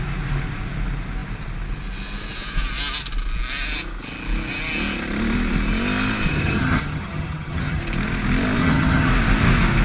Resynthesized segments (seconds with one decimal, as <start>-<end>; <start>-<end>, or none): 6.3-7.8; 8.6-9.1